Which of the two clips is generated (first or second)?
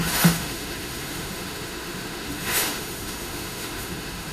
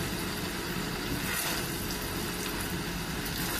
first